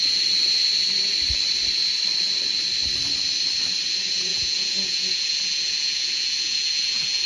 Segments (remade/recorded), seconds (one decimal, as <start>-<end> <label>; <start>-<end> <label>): 0.0-4.3 recorded; 4.3-7.3 remade